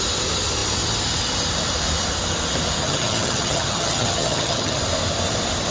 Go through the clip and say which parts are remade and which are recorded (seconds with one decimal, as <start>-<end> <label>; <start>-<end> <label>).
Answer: 0.0-2.8 recorded; 2.8-4.8 remade; 4.8-5.7 recorded